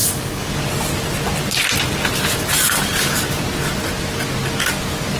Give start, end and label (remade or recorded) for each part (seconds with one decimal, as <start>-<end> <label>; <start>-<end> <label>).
0.0-0.5 remade; 0.5-5.2 recorded